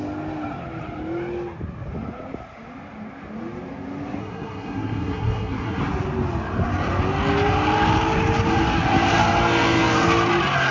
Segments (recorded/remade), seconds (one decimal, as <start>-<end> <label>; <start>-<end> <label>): 0.0-4.2 recorded; 4.2-5.8 remade; 5.8-10.7 recorded